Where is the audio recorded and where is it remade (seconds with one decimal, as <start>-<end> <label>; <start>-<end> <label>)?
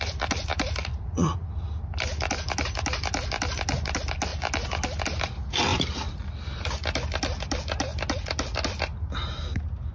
0.0-0.8 recorded; 0.8-1.7 remade; 1.7-9.9 recorded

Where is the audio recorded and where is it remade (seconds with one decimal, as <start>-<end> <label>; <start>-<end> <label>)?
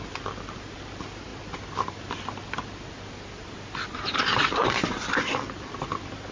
0.0-6.3 recorded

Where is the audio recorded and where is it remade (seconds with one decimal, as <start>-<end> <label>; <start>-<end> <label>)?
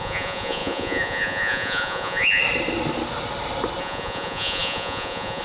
0.0-2.4 remade; 2.4-3.8 recorded; 3.8-5.4 remade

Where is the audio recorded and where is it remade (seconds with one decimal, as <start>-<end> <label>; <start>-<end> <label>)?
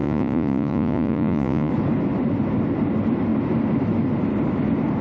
0.0-1.7 remade; 1.7-5.0 recorded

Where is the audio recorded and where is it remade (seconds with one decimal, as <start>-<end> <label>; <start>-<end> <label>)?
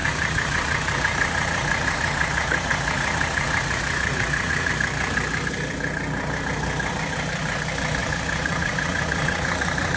0.0-4.7 remade; 4.7-8.0 recorded; 8.0-10.0 remade